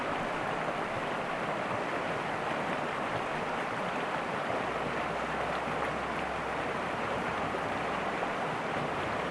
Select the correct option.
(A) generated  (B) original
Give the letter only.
B